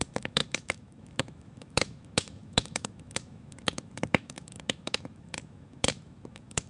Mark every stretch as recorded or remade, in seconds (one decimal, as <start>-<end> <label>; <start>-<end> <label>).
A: 0.0-6.7 remade